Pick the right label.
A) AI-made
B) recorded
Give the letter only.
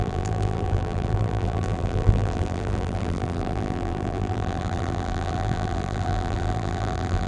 A